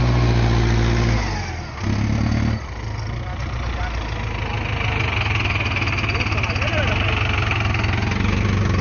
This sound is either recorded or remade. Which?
recorded